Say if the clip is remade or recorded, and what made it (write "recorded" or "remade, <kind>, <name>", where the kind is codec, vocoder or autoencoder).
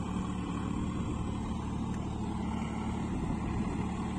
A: recorded